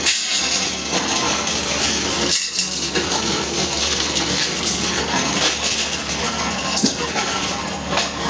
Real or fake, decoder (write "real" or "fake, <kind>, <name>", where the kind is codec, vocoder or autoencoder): fake, codec, SNAC